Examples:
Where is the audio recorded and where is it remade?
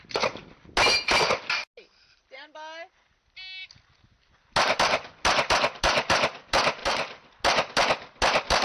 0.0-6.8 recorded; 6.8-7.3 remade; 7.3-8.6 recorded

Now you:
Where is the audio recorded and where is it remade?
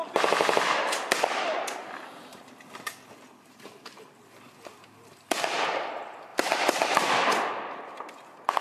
0.0-8.6 recorded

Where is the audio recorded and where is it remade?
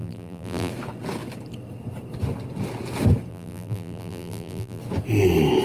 0.0-0.7 remade; 0.7-3.3 recorded; 3.3-4.8 remade; 4.8-5.6 recorded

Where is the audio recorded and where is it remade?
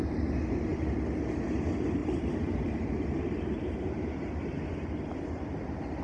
0.0-0.7 recorded; 0.7-1.3 remade; 1.3-2.0 recorded; 2.0-4.9 remade; 4.9-6.0 recorded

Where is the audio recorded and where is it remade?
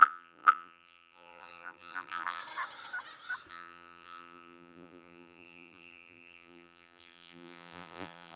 0.0-2.4 remade; 2.4-3.5 recorded; 3.5-8.4 remade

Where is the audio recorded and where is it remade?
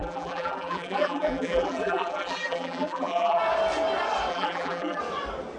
0.0-3.4 remade; 3.4-4.3 recorded; 4.3-5.0 remade; 5.0-5.6 recorded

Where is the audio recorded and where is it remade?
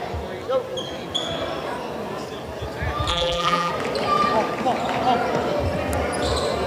0.0-3.1 recorded; 3.1-3.7 remade; 3.7-6.7 recorded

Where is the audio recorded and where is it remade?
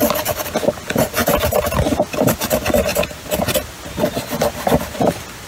0.0-5.5 recorded